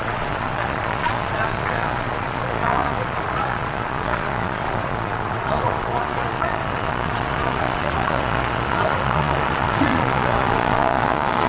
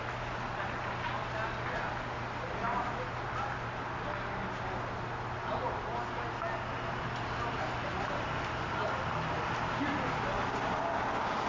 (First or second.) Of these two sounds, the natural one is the second